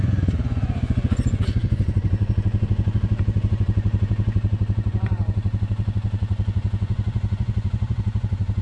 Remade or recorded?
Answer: remade